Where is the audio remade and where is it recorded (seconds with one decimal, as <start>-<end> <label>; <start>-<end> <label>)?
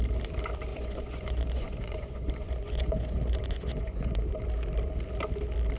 0.0-0.7 recorded; 0.7-4.2 remade; 4.2-5.8 recorded